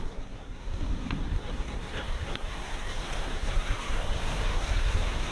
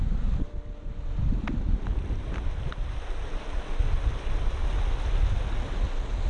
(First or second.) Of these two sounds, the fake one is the first